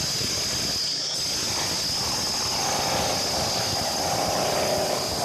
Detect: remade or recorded recorded